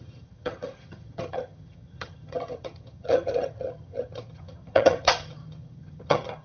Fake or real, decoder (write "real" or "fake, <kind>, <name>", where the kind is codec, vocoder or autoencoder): fake, vocoder, HiFi-GAN